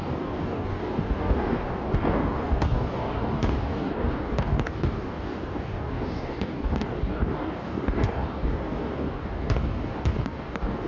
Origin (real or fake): fake